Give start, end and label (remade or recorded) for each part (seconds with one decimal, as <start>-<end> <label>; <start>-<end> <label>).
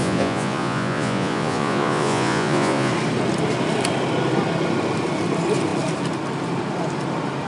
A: 0.0-2.9 remade; 2.9-7.5 recorded